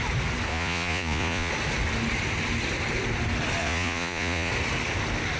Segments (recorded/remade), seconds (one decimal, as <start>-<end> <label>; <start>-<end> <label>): 0.0-0.5 recorded; 0.5-1.5 remade; 1.5-3.6 recorded; 3.6-4.5 remade; 4.5-5.4 recorded